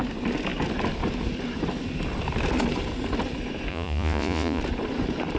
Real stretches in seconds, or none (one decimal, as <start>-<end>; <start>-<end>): 0.0-3.7; 4.6-5.4